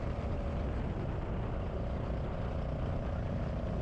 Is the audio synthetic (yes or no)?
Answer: no